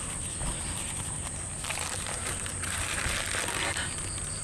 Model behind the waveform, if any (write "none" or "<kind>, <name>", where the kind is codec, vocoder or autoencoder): none